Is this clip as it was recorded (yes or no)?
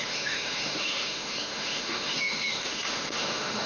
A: no